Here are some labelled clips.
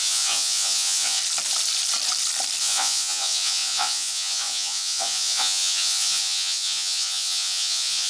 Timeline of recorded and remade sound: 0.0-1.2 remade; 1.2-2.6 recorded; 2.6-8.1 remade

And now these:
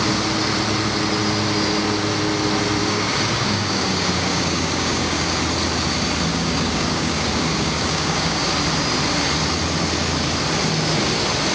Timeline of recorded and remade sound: 0.0-2.8 recorded; 2.8-5.4 remade; 5.4-6.3 recorded; 6.3-8.5 remade; 8.5-11.5 recorded

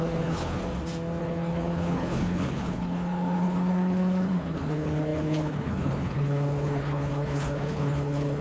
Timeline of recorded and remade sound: 0.0-0.6 remade; 0.6-1.2 recorded; 1.2-8.4 remade